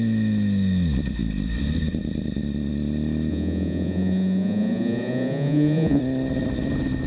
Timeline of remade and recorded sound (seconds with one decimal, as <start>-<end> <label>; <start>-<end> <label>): 0.0-3.3 recorded; 3.3-6.0 remade; 6.0-7.1 recorded